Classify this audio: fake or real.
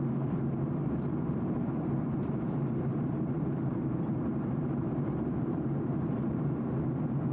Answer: fake